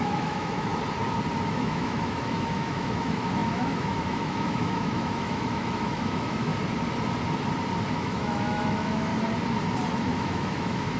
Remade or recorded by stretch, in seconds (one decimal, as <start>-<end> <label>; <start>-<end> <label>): 0.0-0.7 remade; 0.7-1.5 recorded; 1.5-6.5 remade; 6.5-7.9 recorded; 7.9-9.1 remade; 9.1-10.0 recorded; 10.0-11.0 remade